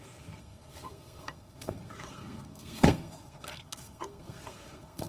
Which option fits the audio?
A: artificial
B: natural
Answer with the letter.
A